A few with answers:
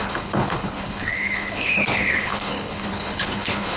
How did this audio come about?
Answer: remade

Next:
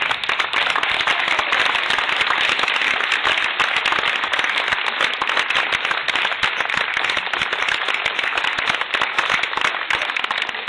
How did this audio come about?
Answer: recorded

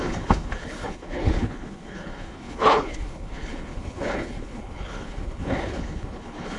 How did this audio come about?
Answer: remade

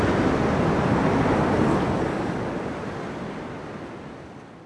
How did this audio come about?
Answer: recorded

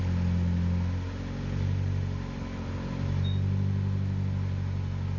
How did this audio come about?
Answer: recorded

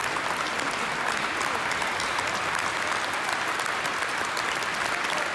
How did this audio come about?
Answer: recorded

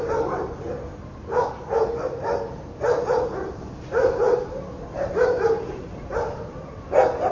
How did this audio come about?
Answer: recorded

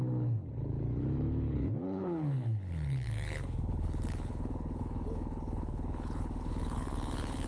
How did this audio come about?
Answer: remade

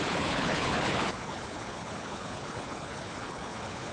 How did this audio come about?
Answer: remade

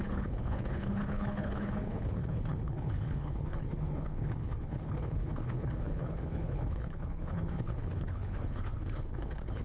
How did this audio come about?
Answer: remade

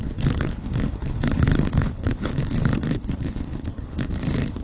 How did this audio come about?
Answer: remade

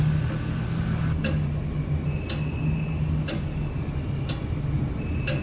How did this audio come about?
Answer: recorded